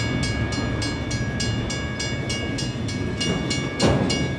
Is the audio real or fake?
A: real